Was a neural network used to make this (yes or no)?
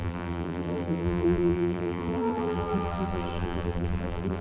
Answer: yes